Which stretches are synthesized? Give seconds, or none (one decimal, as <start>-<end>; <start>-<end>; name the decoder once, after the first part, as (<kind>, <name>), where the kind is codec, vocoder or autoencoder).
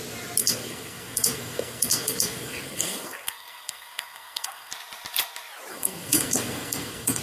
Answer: 0.4-4.7 (codec, SNAC); 5.7-7.2